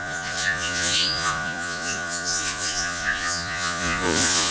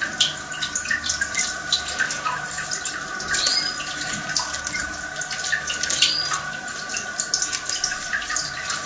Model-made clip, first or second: first